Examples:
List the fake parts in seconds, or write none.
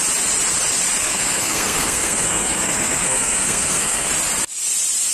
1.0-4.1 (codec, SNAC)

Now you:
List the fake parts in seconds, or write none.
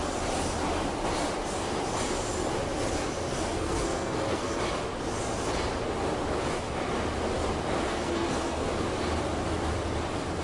3.3-4.6 (codec, SNAC); 7.9-8.7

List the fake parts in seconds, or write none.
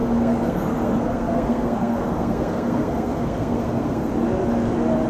0.0-4.1 (codec, SNAC)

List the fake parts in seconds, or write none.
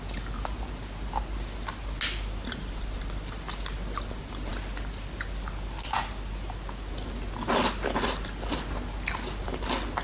none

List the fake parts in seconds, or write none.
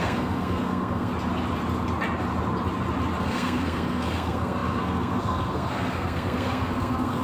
0.0-1.1 (codec, SNAC); 3.2-7.2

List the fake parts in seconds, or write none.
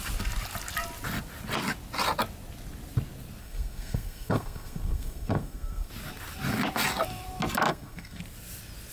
3.4-5.9 (codec, SNAC); 7.7-8.2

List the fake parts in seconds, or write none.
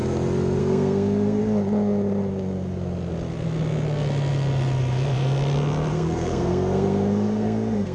0.6-1.4 (codec, SNAC); 5.9-7.9